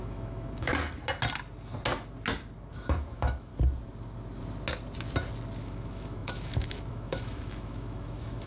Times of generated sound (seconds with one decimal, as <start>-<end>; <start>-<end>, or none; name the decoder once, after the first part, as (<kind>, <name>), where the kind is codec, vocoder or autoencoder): 0.0-0.7 (autoencoder, DAC-VAE); 2.7-3.5; 5.6-8.5